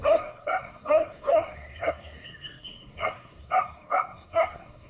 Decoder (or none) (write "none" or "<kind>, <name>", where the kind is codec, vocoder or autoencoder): codec, SNAC